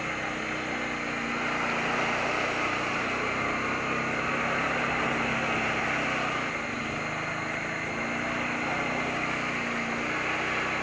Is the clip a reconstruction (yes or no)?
no